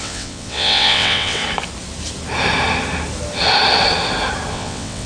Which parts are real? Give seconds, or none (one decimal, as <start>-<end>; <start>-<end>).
1.4-4.5